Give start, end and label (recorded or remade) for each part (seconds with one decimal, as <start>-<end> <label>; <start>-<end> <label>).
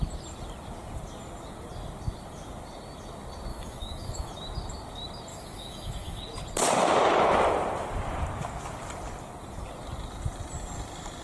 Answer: 0.0-3.5 recorded; 3.5-4.3 remade; 4.3-5.3 recorded; 5.3-6.2 remade; 6.2-11.2 recorded